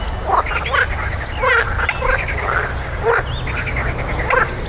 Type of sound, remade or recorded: recorded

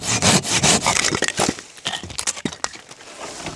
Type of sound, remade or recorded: recorded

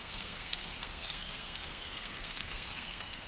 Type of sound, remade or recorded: remade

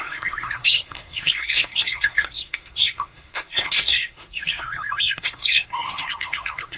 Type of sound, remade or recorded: remade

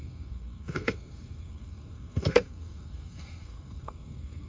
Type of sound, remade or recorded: remade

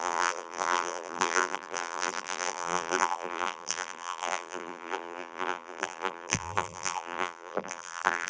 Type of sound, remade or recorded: remade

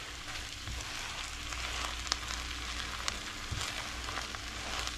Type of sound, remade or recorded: recorded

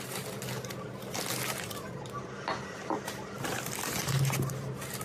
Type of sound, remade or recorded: recorded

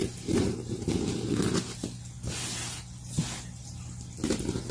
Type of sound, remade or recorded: recorded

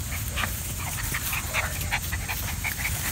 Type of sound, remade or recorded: recorded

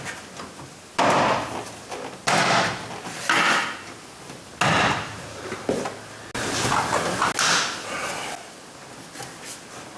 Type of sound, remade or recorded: recorded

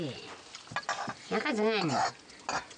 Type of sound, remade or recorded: recorded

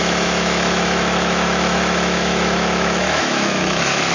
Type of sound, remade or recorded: remade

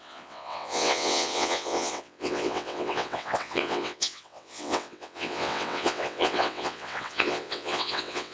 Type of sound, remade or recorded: remade